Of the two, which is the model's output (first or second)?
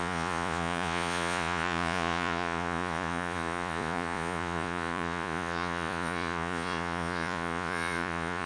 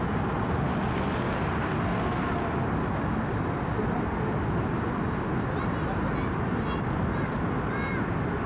first